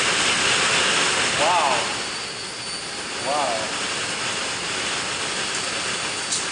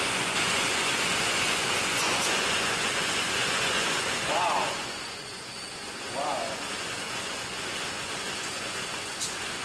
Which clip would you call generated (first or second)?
second